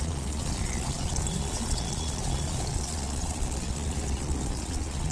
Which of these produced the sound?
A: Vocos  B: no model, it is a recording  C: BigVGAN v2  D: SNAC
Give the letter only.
A